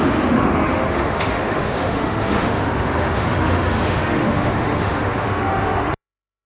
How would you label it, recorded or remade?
remade